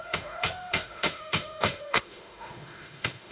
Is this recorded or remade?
remade